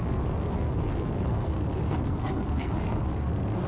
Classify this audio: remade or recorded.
remade